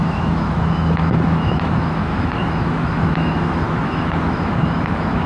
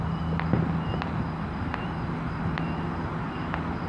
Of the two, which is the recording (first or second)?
second